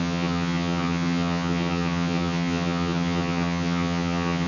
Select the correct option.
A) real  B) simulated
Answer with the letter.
B